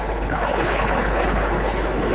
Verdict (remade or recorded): remade